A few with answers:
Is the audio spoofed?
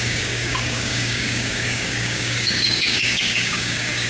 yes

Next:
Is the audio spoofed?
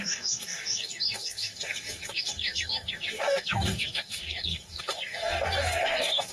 yes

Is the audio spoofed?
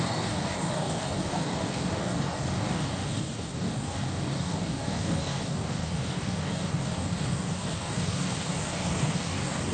yes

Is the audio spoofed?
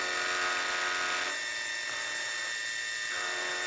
no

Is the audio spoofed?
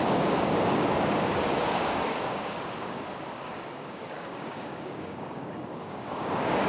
yes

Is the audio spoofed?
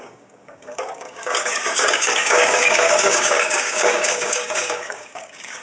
yes